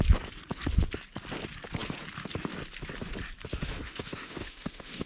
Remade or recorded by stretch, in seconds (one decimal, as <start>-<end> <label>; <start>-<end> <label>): 0.0-3.5 recorded; 3.5-5.1 remade